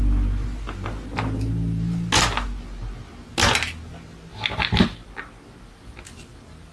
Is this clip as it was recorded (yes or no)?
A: yes